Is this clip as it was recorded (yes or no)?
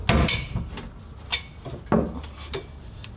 yes